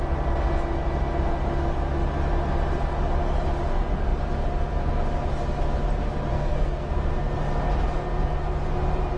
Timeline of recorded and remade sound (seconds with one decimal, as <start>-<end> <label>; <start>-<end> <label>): 0.0-6.3 recorded; 6.3-6.9 remade; 6.9-9.2 recorded